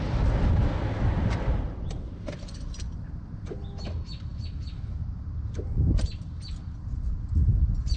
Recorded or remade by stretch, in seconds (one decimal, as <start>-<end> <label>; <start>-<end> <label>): 0.0-8.0 recorded